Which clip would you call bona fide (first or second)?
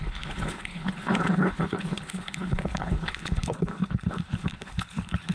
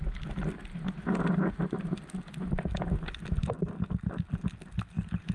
second